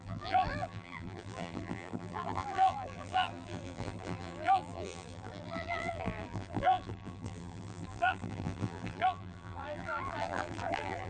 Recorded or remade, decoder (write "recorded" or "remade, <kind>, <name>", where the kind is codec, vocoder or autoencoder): remade, vocoder, BigVGAN v2